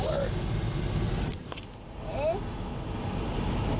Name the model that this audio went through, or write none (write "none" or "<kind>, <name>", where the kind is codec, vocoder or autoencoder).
none